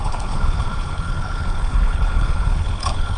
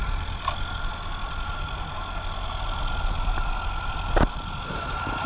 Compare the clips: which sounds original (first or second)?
second